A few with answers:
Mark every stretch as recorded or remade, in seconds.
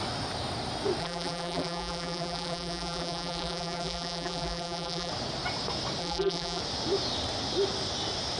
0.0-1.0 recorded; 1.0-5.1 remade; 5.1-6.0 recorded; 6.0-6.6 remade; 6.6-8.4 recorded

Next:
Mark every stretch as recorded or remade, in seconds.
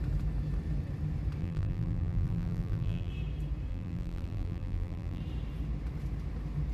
0.0-1.4 recorded; 1.4-3.1 remade; 3.1-3.7 recorded; 3.7-5.2 remade; 5.2-6.7 recorded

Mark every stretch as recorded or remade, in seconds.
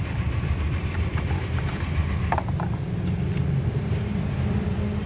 0.0-5.1 remade